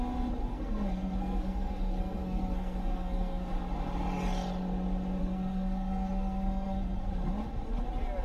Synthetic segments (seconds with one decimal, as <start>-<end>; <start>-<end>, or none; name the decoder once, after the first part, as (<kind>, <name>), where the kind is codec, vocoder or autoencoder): 0.4-3.5 (codec, SNAC); 5.2-7.1